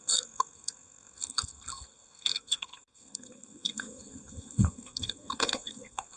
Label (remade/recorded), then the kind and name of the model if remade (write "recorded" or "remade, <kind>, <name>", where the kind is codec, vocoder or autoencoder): remade, codec, SNAC